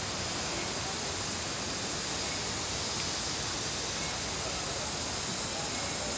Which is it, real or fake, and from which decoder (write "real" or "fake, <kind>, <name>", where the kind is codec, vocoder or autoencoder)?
real